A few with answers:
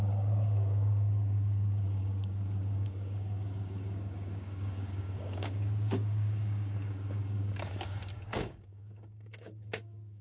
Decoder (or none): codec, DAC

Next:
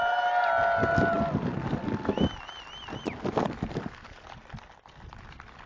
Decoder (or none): none